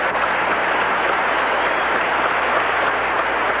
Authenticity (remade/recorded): recorded